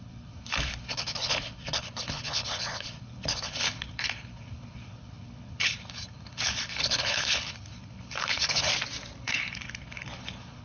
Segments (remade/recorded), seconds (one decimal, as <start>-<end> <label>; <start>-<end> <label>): 0.0-8.7 remade; 8.7-9.2 recorded; 9.2-10.6 remade